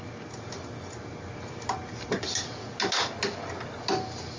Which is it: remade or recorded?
recorded